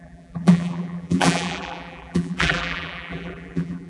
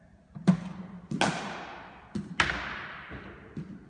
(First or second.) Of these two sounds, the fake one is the first